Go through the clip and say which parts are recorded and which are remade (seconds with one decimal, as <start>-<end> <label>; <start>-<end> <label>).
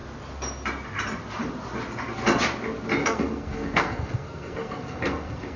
0.0-3.0 recorded; 3.0-5.6 remade